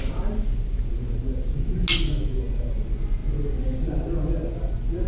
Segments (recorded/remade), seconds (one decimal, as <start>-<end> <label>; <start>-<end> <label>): 0.0-5.1 recorded